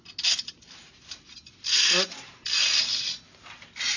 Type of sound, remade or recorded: recorded